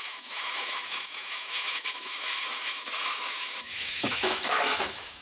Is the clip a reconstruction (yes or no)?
yes